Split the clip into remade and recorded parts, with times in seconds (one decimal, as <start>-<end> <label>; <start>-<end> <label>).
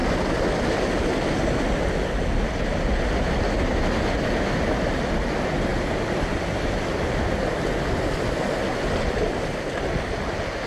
0.0-10.7 recorded